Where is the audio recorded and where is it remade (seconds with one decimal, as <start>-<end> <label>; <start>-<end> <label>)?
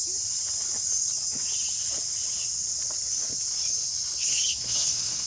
0.0-4.5 recorded; 4.5-5.3 remade